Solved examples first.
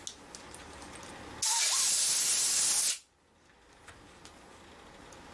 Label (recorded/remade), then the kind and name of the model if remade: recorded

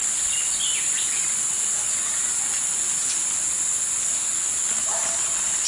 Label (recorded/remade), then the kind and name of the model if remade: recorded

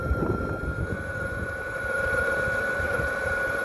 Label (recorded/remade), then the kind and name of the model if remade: recorded